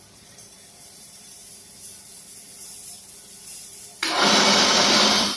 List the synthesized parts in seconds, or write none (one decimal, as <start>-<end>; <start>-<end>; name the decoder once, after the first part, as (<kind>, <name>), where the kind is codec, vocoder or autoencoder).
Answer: 0.0-1.4 (vocoder, BigVGAN v2); 4.6-5.4